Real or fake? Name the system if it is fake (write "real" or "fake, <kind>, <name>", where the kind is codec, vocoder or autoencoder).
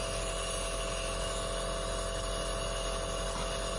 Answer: real